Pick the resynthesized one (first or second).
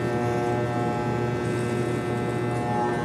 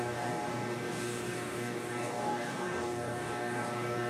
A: second